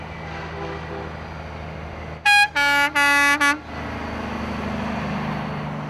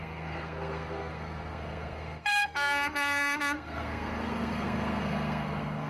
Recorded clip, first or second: first